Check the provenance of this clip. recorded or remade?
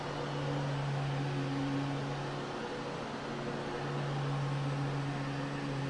recorded